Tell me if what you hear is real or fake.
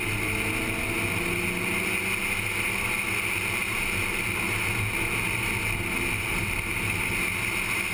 real